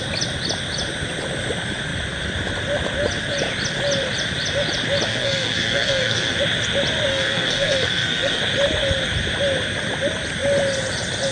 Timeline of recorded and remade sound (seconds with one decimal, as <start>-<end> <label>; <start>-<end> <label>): 0.0-5.1 recorded; 5.1-6.4 remade; 6.4-7.1 recorded; 7.1-8.4 remade; 8.4-11.3 recorded